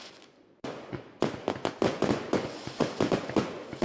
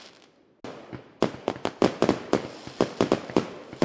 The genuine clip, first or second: second